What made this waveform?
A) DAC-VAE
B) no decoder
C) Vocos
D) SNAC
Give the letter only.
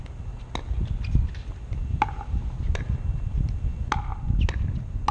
B